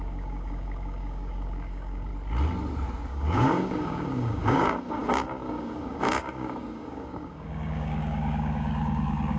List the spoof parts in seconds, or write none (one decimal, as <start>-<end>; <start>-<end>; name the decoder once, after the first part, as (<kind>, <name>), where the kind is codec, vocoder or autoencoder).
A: 0.0-2.1 (codec, DAC); 3.1-9.4